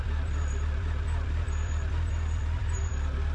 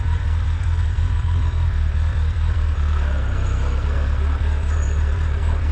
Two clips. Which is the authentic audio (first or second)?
first